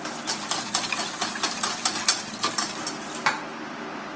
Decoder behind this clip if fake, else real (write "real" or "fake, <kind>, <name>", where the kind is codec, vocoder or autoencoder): real